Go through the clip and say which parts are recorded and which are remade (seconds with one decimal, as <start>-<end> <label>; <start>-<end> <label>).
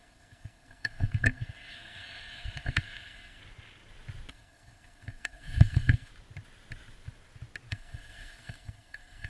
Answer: 0.0-3.4 remade; 3.4-4.3 recorded; 4.3-6.1 remade; 6.1-7.7 recorded; 7.7-9.3 remade